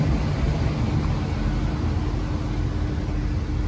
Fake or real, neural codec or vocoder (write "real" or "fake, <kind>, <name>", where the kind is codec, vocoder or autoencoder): real